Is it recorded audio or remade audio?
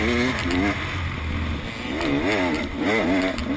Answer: recorded